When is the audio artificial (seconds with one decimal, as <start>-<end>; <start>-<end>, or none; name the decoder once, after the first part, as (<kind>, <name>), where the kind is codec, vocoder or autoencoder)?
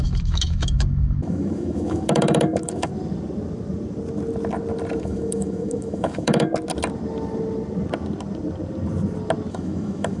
0.0-2.9 (autoencoder, DAC-VAE); 5.0-6.5; 9.5-10.2